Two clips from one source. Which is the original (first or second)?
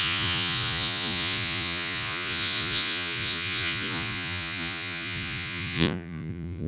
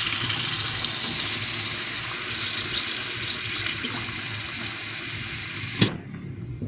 second